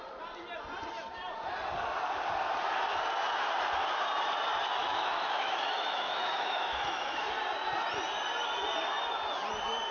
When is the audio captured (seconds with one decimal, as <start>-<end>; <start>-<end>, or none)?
0.0-4.8; 7.3-9.9